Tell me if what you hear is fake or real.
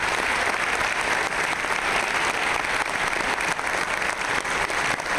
real